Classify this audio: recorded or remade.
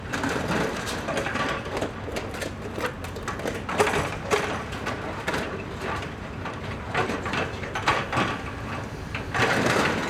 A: remade